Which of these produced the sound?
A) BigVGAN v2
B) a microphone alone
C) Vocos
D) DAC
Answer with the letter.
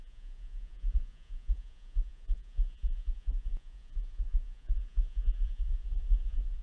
C